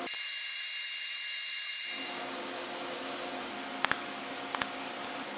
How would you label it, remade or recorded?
recorded